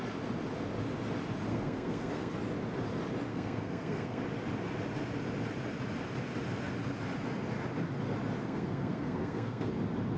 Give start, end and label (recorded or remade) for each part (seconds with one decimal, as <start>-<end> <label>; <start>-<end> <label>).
0.0-1.5 recorded; 1.5-2.3 remade; 2.3-3.3 recorded; 3.3-4.2 remade; 4.2-8.4 recorded; 8.4-9.7 remade; 9.7-10.2 recorded

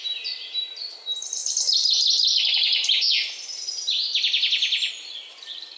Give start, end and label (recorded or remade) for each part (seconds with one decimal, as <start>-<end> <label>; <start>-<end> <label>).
0.0-1.4 recorded; 1.4-4.9 remade; 4.9-5.8 recorded